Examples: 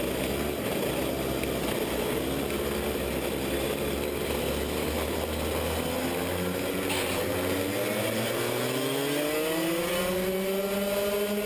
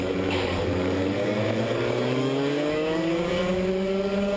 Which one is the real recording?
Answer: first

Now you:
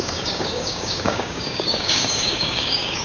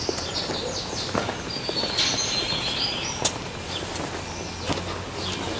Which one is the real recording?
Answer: second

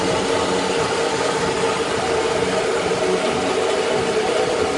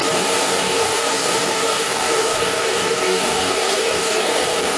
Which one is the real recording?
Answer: first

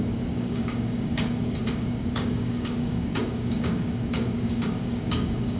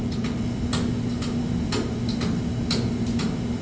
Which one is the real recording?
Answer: second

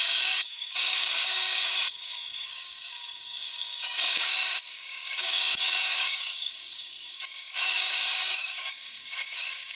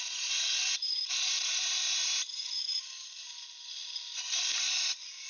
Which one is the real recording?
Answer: second